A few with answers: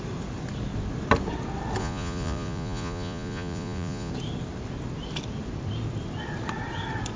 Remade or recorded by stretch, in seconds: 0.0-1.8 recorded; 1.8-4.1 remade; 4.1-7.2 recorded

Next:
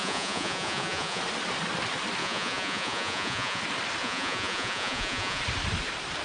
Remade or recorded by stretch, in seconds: 0.0-1.2 remade; 1.2-2.2 recorded; 2.2-3.6 remade; 3.6-4.0 recorded; 4.0-5.4 remade; 5.4-6.2 recorded

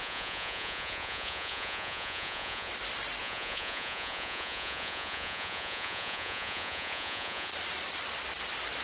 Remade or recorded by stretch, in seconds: 0.0-2.7 remade; 2.7-3.2 recorded; 3.2-7.5 remade; 7.5-8.8 recorded

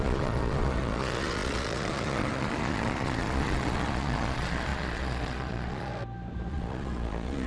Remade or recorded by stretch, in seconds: 0.0-5.9 remade; 5.9-6.5 recorded; 6.5-7.5 remade

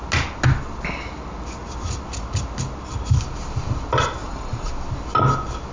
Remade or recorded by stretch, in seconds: 0.0-4.2 recorded; 4.2-4.7 remade; 4.7-5.7 recorded

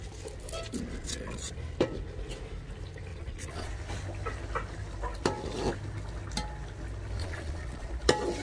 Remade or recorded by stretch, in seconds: 0.0-1.0 recorded; 1.0-1.5 remade; 1.5-3.1 recorded; 3.1-3.7 remade; 3.7-7.2 recorded; 7.2-7.9 remade; 7.9-8.4 recorded